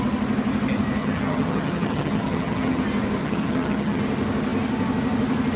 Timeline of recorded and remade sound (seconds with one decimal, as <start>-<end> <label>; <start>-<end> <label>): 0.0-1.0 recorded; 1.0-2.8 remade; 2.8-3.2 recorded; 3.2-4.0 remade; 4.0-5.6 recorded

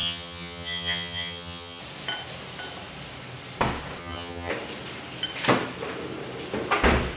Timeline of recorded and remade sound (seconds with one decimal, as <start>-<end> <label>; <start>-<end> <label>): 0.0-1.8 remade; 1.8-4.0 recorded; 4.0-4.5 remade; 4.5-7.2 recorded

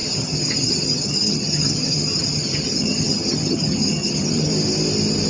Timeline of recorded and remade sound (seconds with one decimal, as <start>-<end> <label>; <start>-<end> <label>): 0.0-4.5 remade; 4.5-5.3 recorded

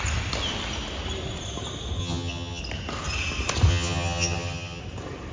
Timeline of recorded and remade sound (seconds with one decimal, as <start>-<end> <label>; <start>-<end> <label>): 0.0-2.0 recorded; 2.0-2.6 remade; 2.6-3.7 recorded; 3.7-4.8 remade; 4.8-5.3 recorded